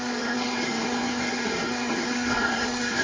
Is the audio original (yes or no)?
no